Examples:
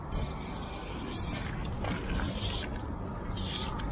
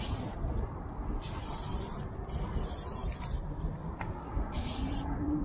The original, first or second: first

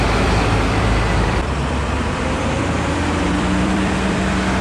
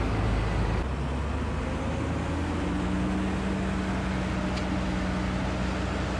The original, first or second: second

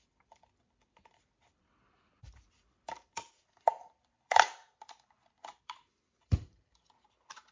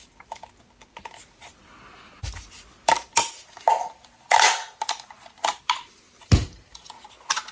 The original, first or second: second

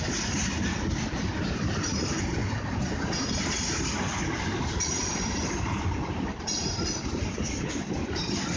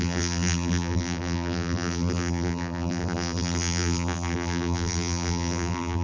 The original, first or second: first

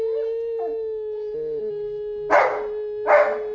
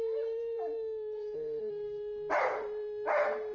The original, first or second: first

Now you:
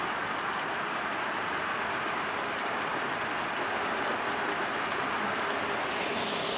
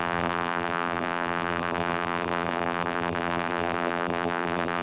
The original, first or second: first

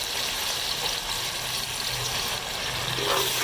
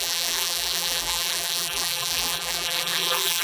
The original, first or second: first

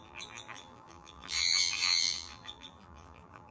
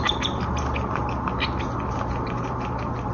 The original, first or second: second